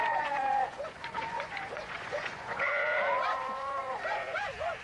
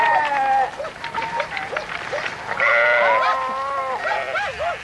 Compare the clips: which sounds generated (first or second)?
first